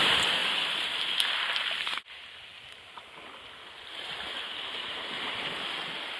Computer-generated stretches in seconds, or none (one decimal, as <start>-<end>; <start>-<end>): none